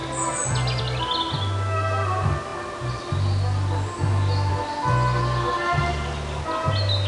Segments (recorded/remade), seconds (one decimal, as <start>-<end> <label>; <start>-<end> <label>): 0.0-7.1 recorded